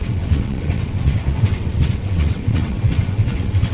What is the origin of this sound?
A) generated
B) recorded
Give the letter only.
A